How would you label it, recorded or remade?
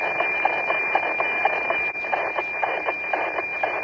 recorded